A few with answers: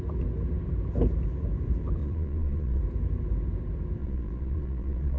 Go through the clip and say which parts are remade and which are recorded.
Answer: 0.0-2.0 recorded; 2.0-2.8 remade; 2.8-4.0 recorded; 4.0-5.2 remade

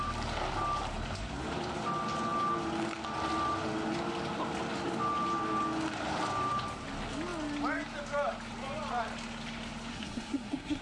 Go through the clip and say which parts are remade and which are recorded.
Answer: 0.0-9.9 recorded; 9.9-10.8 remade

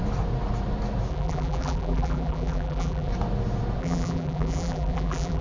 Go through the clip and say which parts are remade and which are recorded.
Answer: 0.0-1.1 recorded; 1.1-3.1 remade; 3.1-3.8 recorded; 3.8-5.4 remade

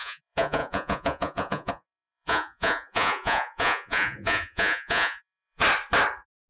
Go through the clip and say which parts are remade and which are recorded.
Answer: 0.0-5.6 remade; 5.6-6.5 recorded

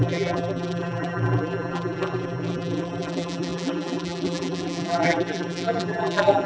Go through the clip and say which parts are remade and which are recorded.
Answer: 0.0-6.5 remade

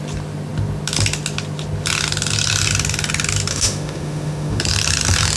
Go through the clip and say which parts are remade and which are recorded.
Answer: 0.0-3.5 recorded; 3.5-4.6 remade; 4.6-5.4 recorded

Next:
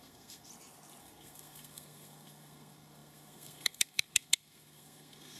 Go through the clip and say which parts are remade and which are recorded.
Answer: 0.0-0.5 remade; 0.5-1.0 recorded; 1.0-5.4 remade

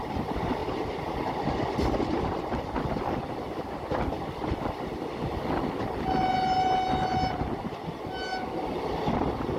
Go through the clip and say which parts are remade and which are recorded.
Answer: 0.0-8.3 recorded; 8.3-8.9 remade; 8.9-9.6 recorded